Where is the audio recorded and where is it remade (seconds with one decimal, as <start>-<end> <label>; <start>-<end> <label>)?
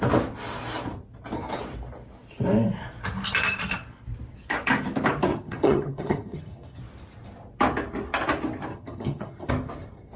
0.0-5.3 recorded; 5.3-6.8 remade; 6.8-8.7 recorded; 8.7-9.5 remade; 9.5-10.2 recorded